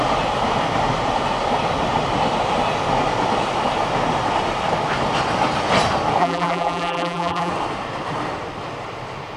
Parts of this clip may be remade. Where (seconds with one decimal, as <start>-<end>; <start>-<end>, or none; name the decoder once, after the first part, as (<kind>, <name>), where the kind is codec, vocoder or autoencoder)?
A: 6.2-7.5 (vocoder, BigVGAN v2)